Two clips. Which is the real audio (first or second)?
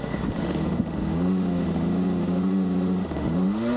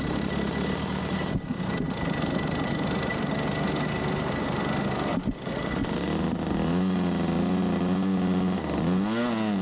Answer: second